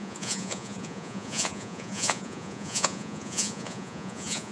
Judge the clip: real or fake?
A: fake